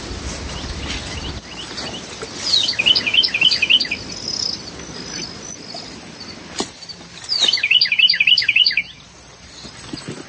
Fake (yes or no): no